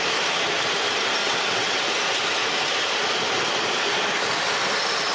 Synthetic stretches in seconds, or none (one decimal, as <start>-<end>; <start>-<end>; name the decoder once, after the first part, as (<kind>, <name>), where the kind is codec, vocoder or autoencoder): 1.2-1.8 (vocoder, WaveNeXt)